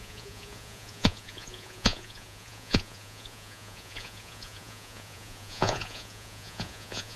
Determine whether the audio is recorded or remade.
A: remade